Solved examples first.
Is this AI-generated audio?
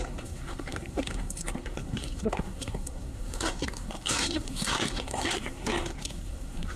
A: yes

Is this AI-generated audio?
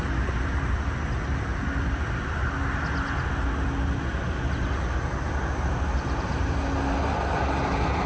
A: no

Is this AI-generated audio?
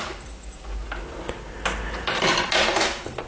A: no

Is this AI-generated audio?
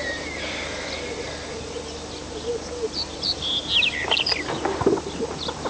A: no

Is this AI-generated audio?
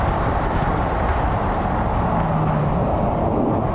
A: no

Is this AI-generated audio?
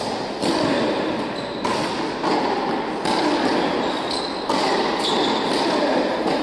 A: no